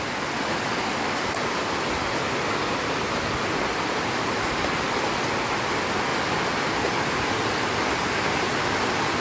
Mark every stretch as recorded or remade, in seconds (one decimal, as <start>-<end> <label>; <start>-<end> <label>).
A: 0.0-6.1 recorded; 6.1-7.8 remade; 7.8-9.2 recorded